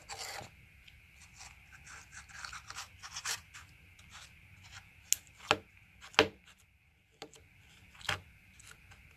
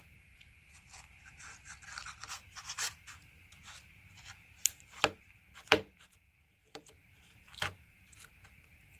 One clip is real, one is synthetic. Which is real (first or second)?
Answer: first